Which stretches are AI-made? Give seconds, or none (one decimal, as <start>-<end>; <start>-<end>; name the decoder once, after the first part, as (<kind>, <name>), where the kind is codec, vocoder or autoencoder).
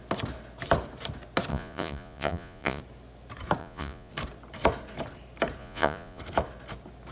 1.5-2.8 (vocoder, Vocos); 3.6-4.1; 5.6-6.2